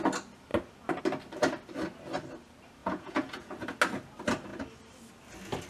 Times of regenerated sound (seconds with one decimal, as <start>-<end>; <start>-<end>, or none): 2.8-3.5